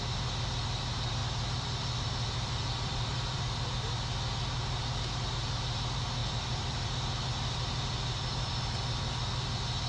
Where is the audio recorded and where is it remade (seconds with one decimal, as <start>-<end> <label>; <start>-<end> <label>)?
0.0-1.2 recorded; 1.2-3.4 remade; 3.4-6.2 recorded; 6.2-6.9 remade; 6.9-9.9 recorded